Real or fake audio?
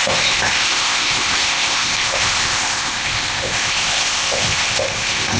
fake